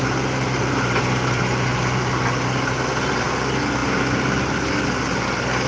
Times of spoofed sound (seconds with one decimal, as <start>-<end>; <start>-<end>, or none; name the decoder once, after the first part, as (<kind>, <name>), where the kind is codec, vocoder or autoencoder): none